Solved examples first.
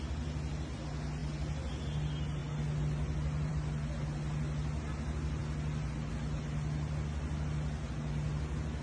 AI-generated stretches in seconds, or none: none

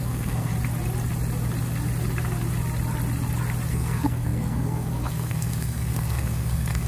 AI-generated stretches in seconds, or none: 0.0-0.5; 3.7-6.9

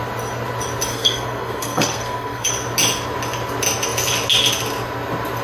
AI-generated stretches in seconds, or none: 0.9-2.5

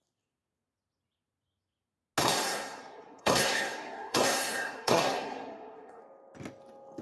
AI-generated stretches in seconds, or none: 2.2-6.0

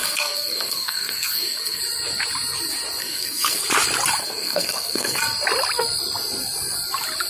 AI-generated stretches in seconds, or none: 0.0-1.8; 3.0-3.6; 4.2-5.2